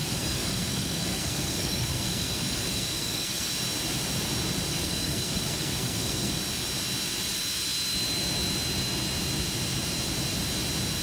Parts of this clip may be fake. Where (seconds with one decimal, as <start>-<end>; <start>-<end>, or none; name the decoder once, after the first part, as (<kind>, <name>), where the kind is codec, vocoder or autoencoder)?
0.0-3.5 (codec, SNAC); 4.7-6.3